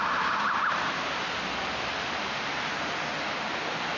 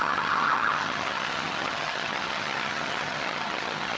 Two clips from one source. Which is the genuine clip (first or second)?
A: first